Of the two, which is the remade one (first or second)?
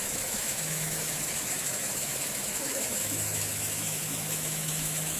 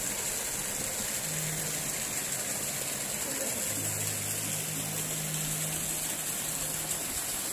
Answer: first